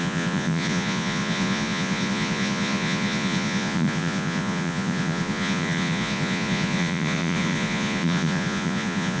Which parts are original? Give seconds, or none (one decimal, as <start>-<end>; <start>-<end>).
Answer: none